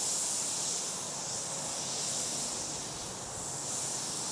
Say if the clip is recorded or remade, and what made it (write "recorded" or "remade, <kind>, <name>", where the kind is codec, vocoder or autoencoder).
recorded